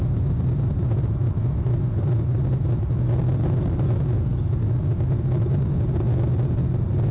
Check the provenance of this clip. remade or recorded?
recorded